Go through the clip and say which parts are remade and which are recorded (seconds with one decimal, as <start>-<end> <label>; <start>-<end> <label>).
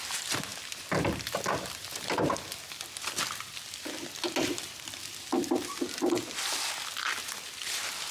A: 0.0-8.1 recorded